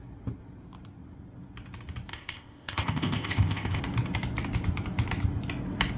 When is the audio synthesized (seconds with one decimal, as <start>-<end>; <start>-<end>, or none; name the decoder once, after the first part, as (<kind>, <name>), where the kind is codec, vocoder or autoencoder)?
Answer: 2.1-3.8 (codec, ZipCodec)